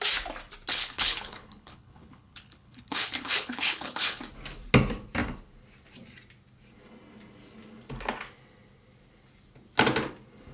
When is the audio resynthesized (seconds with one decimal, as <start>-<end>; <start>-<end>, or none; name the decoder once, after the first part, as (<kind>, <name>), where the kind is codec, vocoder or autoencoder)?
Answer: 0.7-4.2 (codec, HILCodec)